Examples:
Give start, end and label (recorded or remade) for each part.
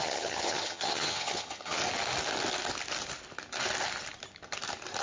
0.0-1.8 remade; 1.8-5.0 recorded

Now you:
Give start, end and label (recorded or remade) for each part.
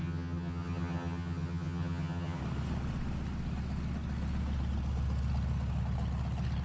0.0-2.4 remade; 2.4-6.6 recorded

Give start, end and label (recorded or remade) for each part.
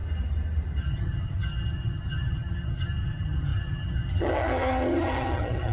0.0-0.8 recorded; 0.8-5.7 remade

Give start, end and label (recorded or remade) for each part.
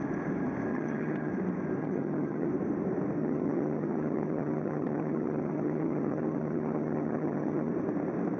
0.0-0.7 recorded; 0.7-1.3 remade; 1.3-1.8 recorded; 1.8-2.5 remade; 2.5-3.2 recorded; 3.2-7.7 remade; 7.7-8.4 recorded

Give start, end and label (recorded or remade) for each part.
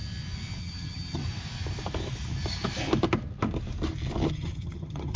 0.0-0.6 recorded; 0.6-1.2 remade; 1.2-4.3 recorded; 4.3-5.2 remade